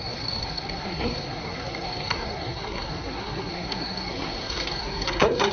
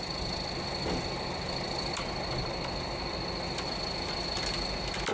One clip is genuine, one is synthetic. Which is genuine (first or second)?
second